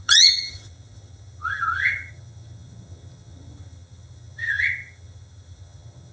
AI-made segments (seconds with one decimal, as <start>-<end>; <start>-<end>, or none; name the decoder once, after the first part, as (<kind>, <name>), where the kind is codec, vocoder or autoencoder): 0.0-6.1 (vocoder, HiFi-GAN)